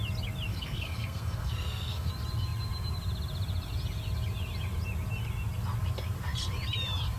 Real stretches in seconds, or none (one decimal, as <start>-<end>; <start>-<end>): 0.0-0.5; 2.1-7.2